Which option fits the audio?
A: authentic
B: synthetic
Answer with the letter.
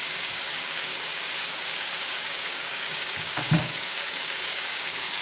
B